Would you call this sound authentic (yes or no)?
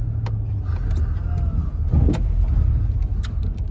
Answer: yes